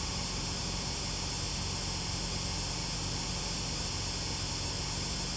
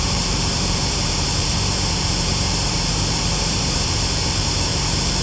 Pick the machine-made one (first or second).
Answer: second